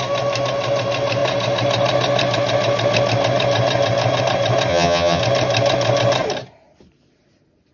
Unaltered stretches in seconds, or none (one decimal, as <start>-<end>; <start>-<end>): 0.0-4.7; 5.2-7.7